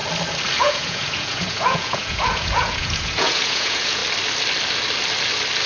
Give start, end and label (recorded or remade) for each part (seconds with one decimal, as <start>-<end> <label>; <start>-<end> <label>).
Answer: 0.0-0.6 recorded; 0.6-4.0 remade; 4.0-5.7 recorded